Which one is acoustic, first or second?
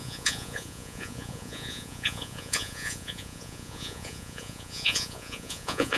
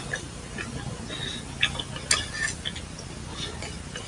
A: second